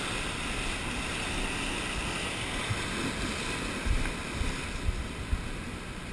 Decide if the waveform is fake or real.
real